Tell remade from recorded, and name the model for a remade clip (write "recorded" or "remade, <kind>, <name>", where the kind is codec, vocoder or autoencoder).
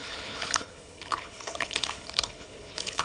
remade, codec, HILCodec